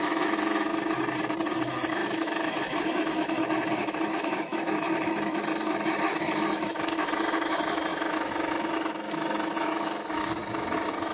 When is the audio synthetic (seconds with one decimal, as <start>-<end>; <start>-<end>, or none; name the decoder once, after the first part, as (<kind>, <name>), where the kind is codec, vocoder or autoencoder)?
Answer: 0.0-0.7 (autoencoder, DAC-VAE); 1.5-11.1